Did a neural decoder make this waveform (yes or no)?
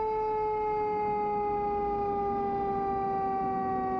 no